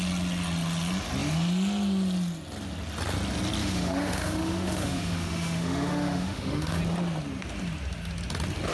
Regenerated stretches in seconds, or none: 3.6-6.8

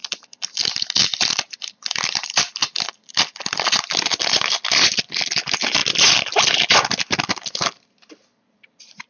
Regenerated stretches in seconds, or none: none

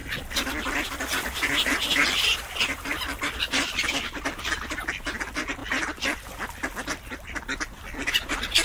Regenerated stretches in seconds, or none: none

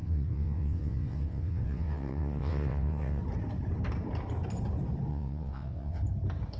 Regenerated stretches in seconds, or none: 0.0-3.2; 5.1-6.0

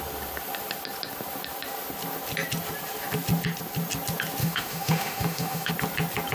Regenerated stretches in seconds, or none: 4.4-5.7

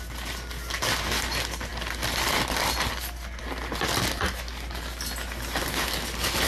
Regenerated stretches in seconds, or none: none

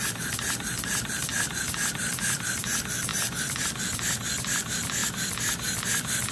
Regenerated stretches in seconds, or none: 0.0-1.3; 1.9-5.0

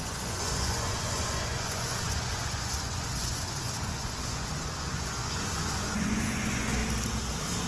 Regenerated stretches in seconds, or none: 0.0-6.8